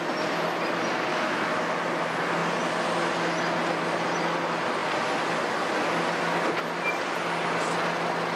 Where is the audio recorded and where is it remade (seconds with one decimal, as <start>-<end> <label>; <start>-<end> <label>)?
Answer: 0.0-1.1 recorded; 1.1-1.8 remade; 1.8-8.4 recorded